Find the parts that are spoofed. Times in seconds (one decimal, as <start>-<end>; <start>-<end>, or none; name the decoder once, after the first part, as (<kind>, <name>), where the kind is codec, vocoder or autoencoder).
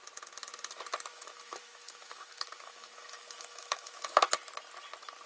1.1-4.3 (autoencoder, DAC-VAE)